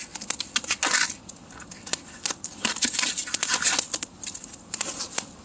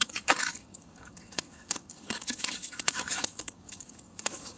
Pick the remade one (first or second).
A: second